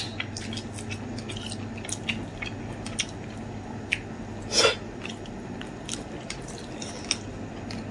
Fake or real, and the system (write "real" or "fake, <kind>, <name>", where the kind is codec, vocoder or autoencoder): real